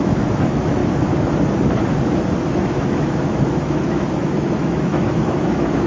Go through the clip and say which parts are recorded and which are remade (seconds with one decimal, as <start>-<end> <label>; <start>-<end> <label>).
0.0-0.8 remade; 0.8-2.5 recorded; 2.5-5.9 remade